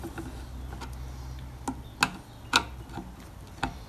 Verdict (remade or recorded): recorded